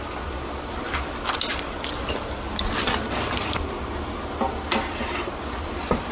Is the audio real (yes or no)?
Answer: yes